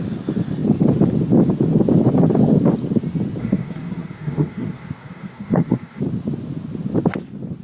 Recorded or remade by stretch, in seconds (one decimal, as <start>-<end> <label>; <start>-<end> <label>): 0.0-3.4 recorded; 3.4-6.0 remade; 6.0-7.6 recorded